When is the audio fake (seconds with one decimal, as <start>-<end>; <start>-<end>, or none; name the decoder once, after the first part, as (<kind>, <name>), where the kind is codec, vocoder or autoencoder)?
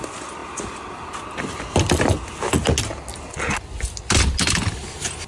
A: none